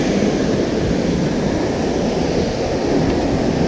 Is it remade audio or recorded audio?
recorded